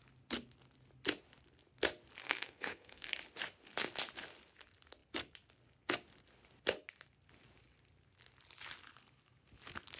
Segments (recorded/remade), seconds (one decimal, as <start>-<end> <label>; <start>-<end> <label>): 0.0-2.2 recorded; 2.2-3.1 remade; 3.1-10.0 recorded